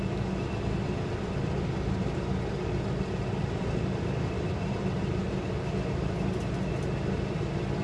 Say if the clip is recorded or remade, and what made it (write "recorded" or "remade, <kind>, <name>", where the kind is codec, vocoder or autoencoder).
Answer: recorded